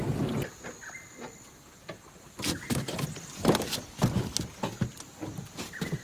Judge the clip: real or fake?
real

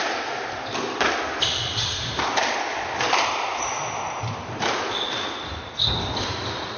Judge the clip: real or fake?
real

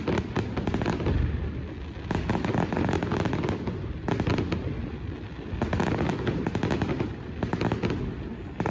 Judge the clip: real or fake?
real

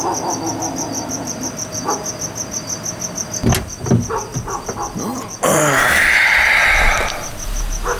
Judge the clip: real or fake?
real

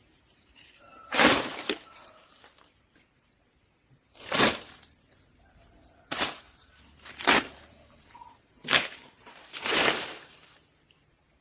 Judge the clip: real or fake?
fake